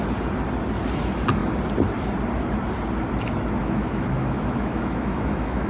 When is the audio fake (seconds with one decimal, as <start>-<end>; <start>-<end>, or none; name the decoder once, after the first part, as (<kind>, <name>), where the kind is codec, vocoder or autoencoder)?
3.6-5.7 (autoencoder, DAC-VAE)